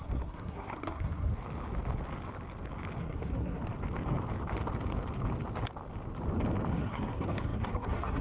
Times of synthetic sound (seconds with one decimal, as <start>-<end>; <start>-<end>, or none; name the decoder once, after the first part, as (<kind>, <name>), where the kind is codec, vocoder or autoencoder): 0.0-1.3 (codec, SNAC); 3.0-3.6; 6.7-8.2